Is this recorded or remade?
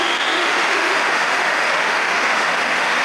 remade